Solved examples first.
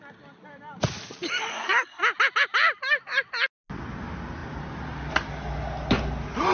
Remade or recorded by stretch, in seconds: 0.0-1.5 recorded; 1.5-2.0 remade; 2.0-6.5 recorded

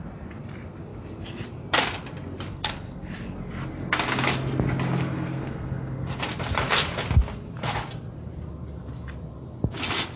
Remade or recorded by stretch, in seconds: 0.0-2.5 recorded; 2.5-3.1 remade; 3.1-5.0 recorded; 5.0-6.3 remade; 6.3-10.2 recorded